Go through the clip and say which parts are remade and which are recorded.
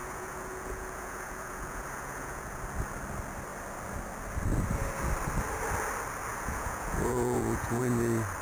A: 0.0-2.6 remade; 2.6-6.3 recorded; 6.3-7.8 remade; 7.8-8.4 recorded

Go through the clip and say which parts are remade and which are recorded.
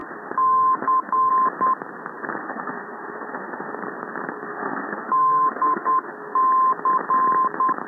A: 0.0-1.3 remade; 1.3-2.4 recorded; 2.4-3.7 remade; 3.7-4.5 recorded; 4.5-6.1 remade; 6.1-7.9 recorded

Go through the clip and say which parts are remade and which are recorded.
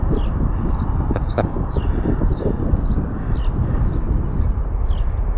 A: 0.0-1.3 recorded; 1.3-1.8 remade; 1.8-5.4 recorded